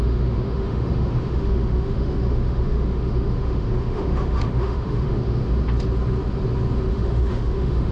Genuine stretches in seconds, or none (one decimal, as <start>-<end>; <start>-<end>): 5.4-6.9